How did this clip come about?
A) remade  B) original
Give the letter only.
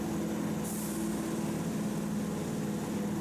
B